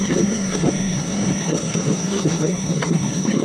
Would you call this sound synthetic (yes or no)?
yes